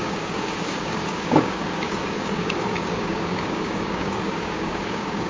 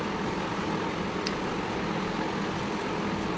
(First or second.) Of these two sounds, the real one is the second